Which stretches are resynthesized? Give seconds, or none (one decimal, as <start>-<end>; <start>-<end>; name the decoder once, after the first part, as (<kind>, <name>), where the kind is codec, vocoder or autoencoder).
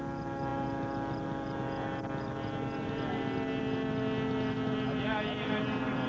none